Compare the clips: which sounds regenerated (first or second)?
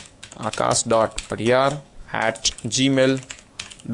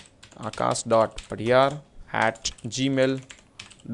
first